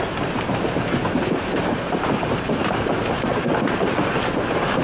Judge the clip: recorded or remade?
remade